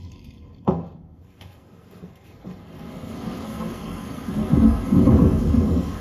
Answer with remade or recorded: remade